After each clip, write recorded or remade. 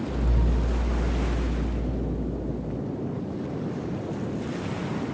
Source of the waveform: recorded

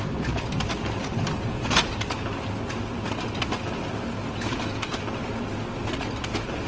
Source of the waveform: recorded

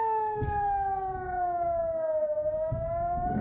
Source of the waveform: remade